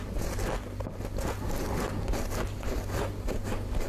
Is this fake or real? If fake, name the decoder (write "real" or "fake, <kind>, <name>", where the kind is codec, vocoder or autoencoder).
real